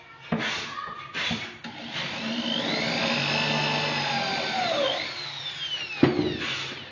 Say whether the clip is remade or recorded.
recorded